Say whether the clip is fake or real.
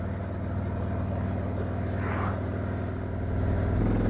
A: real